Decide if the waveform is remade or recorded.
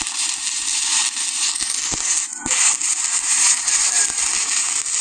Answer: recorded